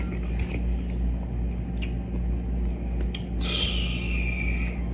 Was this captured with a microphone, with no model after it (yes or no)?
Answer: yes